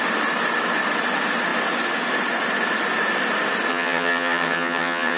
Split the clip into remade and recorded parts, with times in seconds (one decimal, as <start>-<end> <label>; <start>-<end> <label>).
0.0-3.7 recorded; 3.7-5.2 remade